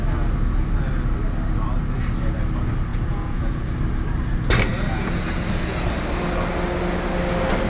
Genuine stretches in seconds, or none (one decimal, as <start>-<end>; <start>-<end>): 0.0-2.9; 3.6-4.7; 5.3-7.7